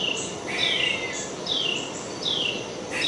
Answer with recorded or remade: recorded